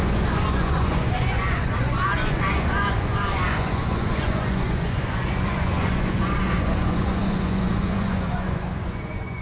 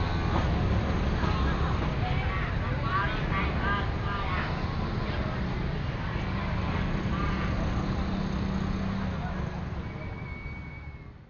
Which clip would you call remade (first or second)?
first